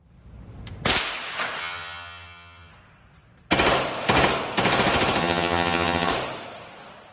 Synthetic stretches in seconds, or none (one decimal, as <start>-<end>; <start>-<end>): 1.6-2.7; 5.2-6.1